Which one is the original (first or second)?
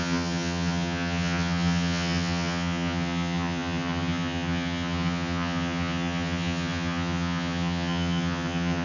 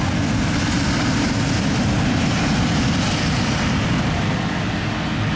second